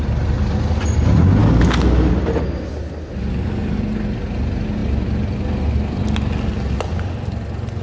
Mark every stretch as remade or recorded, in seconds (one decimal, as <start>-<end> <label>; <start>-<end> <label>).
0.0-1.4 recorded; 1.4-2.1 remade; 2.1-3.3 recorded; 3.3-3.8 remade; 3.8-7.8 recorded